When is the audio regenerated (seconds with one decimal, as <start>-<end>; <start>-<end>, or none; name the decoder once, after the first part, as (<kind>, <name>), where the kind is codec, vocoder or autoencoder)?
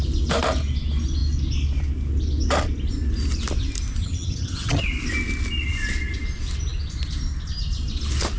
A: 4.0-4.8 (vocoder, HiFi-GAN)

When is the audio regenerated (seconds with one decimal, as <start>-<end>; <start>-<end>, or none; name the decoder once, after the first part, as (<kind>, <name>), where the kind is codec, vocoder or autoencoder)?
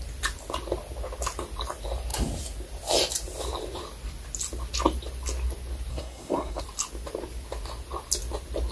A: 5.9-6.6 (codec, SNAC)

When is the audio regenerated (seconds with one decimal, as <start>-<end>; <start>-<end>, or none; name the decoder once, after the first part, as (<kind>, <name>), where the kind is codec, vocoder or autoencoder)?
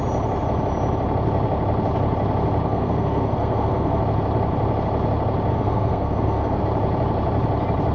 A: 2.6-4.0 (codec, SNAC); 5.5-6.6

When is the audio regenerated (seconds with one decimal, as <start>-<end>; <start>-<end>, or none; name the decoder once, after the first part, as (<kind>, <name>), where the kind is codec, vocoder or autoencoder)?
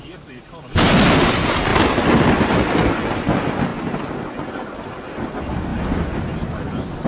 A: none